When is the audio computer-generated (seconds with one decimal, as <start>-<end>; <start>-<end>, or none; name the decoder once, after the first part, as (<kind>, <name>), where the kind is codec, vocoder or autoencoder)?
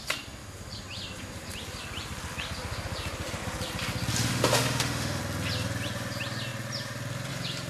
4.3-5.2 (autoencoder, DAC-VAE)